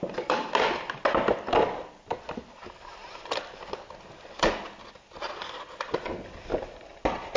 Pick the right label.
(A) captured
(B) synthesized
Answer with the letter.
A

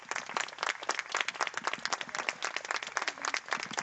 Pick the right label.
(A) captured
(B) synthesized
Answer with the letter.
A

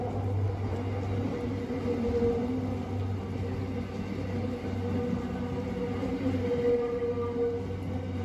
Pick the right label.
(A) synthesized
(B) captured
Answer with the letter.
B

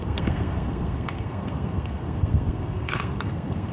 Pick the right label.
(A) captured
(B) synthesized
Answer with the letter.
B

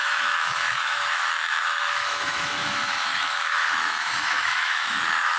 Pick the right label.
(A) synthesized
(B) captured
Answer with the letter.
A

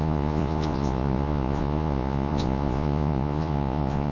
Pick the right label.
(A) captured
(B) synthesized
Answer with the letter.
B